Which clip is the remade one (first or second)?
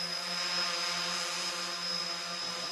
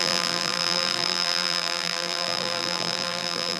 second